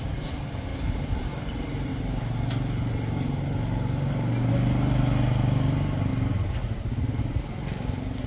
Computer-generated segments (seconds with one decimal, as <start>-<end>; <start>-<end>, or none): none